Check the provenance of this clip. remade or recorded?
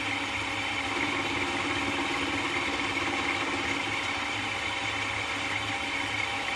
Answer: recorded